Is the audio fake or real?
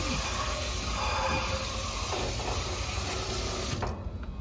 real